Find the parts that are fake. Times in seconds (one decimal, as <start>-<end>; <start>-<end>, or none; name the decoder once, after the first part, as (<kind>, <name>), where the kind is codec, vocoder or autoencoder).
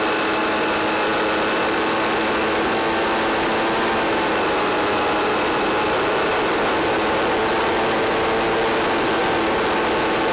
none